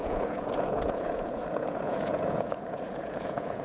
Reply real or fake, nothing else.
fake